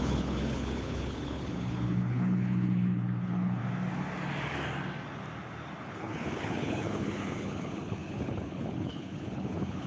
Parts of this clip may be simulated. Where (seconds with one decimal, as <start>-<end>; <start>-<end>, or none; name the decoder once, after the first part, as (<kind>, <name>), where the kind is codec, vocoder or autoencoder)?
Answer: 0.0-3.6 (codec, HILCodec); 5.9-9.9